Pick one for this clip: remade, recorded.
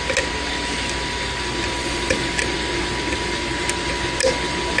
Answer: recorded